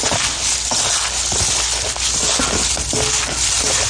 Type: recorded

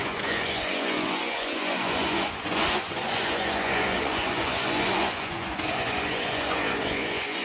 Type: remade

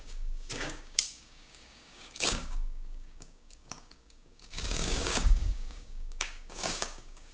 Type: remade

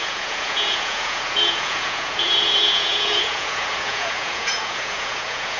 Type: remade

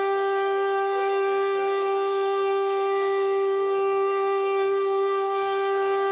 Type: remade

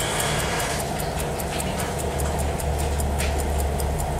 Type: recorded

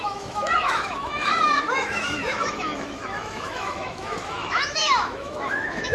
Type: remade